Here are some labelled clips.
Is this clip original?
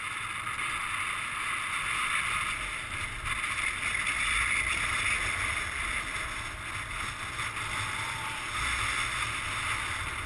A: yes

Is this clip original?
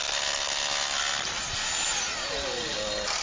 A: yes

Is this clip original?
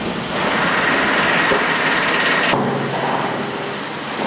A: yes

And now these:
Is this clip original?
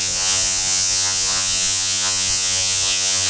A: no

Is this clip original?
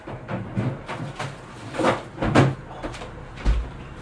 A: no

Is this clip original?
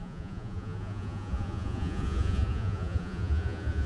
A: no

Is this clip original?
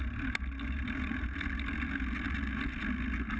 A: yes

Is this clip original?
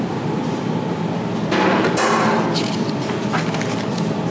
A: yes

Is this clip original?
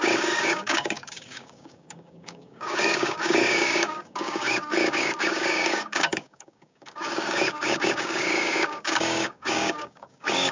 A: no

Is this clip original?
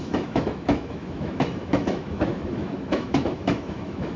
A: no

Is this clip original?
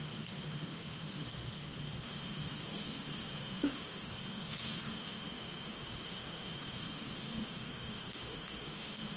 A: no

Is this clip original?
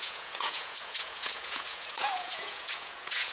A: no